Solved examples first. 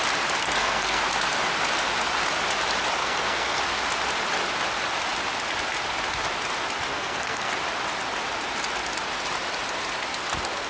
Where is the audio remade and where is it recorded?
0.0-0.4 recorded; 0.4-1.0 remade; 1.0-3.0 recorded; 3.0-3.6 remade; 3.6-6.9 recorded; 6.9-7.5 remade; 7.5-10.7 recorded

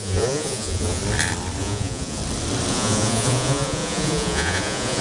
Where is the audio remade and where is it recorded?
0.0-1.0 remade; 1.0-1.6 recorded; 1.6-2.2 remade; 2.2-2.7 recorded; 2.7-5.0 remade